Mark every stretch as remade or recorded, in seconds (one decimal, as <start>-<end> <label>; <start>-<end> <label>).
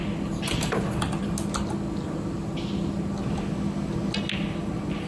0.0-5.1 recorded